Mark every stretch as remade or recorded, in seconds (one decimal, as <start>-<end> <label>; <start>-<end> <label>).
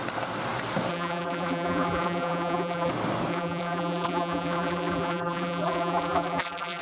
0.0-0.9 recorded; 0.9-2.9 remade; 2.9-3.3 recorded; 3.3-6.8 remade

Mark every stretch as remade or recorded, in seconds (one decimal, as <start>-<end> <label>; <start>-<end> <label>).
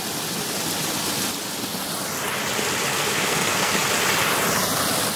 0.0-2.9 recorded; 2.9-3.7 remade; 3.7-5.2 recorded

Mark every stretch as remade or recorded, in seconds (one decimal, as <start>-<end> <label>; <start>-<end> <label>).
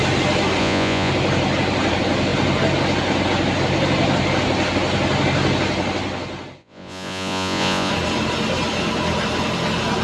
0.0-0.6 recorded; 0.6-1.1 remade; 1.1-6.6 recorded; 6.6-7.9 remade; 7.9-10.0 recorded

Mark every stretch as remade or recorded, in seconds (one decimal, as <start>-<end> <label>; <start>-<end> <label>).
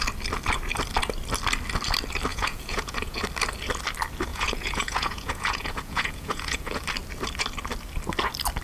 0.0-2.3 recorded; 2.3-3.2 remade; 3.2-4.3 recorded; 4.3-6.8 remade; 6.8-8.6 recorded